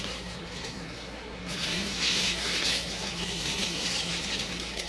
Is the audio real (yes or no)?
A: no